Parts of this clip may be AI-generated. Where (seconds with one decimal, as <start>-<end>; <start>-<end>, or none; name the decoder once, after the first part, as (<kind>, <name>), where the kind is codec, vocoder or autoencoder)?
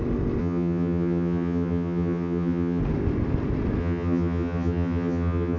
0.4-2.8 (vocoder, HiFi-GAN); 3.8-5.6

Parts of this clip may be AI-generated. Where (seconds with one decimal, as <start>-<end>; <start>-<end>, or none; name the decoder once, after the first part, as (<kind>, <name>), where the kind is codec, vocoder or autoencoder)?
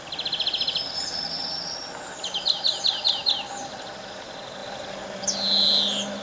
none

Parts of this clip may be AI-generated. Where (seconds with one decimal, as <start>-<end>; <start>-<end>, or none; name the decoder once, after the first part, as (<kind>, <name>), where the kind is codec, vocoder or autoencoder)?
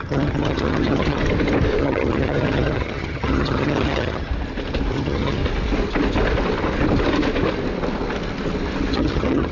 0.0-1.2 (vocoder, HiFi-GAN); 1.8-4.3; 4.9-5.4; 8.9-9.5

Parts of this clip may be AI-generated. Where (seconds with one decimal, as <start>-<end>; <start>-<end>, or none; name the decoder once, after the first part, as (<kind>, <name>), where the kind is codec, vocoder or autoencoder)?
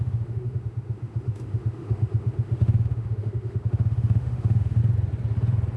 0.0-4.8 (autoencoder, DAC-VAE)